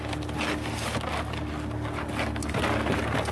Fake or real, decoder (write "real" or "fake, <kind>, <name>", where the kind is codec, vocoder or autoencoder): real